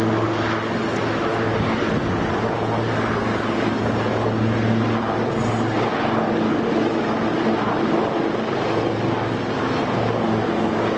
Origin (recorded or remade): recorded